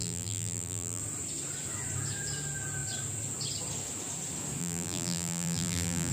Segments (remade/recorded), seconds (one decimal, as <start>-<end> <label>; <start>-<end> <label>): 0.0-1.0 remade; 1.0-4.6 recorded; 4.6-6.1 remade